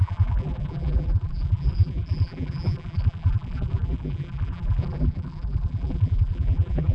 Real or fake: fake